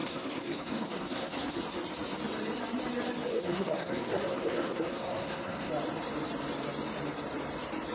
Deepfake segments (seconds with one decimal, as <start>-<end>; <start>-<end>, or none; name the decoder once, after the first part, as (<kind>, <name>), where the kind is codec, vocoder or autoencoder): 0.0-1.6 (codec, SNAC); 3.3-5.7